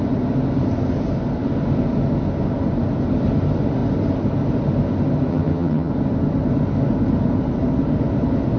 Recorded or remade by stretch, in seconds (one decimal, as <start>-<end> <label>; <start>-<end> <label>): 0.0-5.3 recorded; 5.3-5.9 remade; 5.9-8.6 recorded